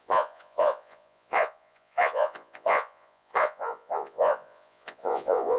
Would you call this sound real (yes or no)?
no